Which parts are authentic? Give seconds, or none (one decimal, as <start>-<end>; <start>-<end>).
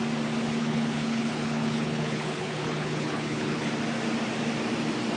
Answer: 0.0-0.6; 3.7-5.2